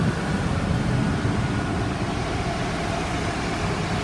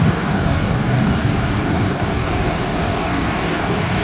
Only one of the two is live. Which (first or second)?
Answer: first